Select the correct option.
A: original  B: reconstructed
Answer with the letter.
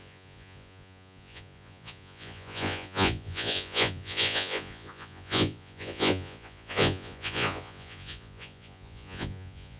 B